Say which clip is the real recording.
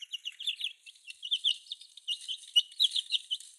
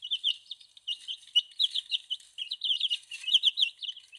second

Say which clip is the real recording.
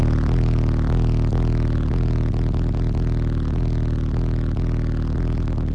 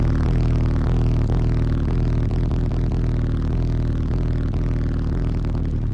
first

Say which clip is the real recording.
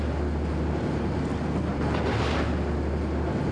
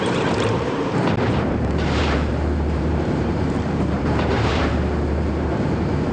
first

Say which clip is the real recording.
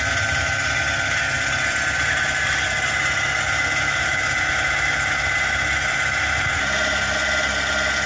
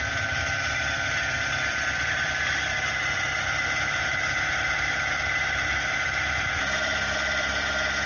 first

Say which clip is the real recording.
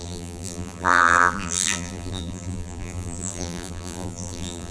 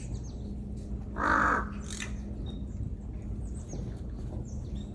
second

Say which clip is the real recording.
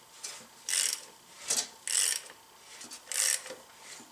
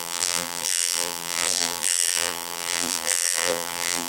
first